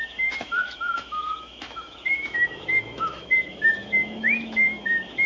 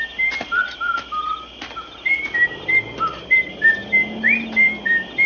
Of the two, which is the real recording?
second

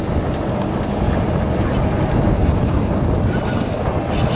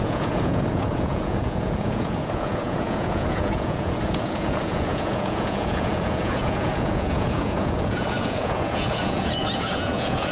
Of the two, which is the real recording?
first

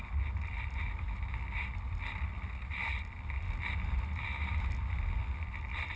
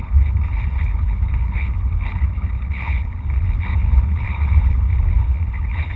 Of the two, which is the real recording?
first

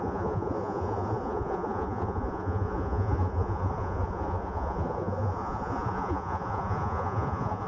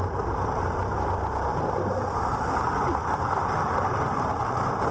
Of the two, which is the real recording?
second